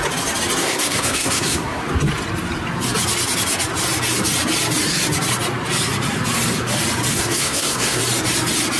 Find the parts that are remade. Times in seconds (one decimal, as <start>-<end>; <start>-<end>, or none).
0.6-1.8; 7.1-8.0